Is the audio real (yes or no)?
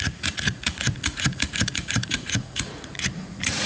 no